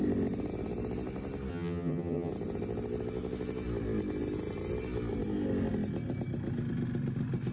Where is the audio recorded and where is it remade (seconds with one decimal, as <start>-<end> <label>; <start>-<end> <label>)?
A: 0.0-1.5 recorded; 1.5-2.3 remade; 2.3-7.5 recorded